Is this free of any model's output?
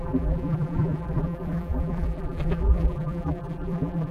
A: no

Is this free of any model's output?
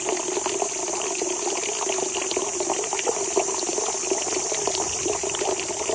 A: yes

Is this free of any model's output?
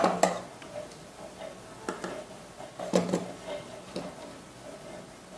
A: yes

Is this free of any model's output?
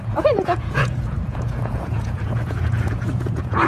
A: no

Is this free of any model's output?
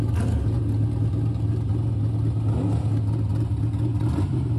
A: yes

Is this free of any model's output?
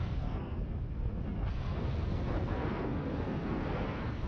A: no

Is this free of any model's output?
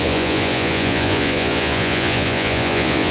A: no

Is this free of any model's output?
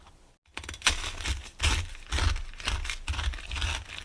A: yes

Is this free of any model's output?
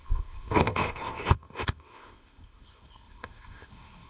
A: no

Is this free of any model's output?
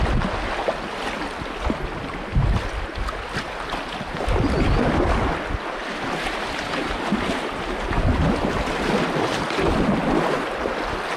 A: yes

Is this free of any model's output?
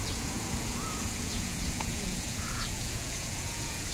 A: no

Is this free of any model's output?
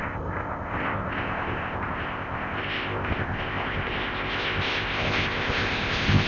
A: no